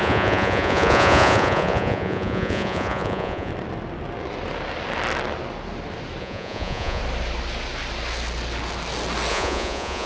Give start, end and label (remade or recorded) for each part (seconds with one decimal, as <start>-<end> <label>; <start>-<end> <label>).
0.0-3.5 remade; 3.5-6.2 recorded; 6.2-7.0 remade; 7.0-9.3 recorded; 9.3-10.1 remade